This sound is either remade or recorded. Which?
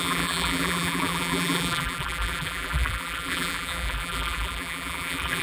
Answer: remade